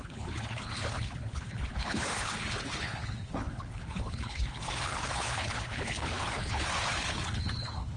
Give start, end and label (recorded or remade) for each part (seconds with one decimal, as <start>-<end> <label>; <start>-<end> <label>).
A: 0.0-8.0 remade